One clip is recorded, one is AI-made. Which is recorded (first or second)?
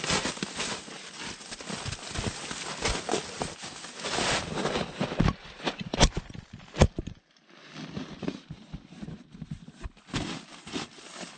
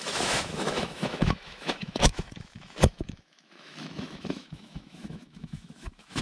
first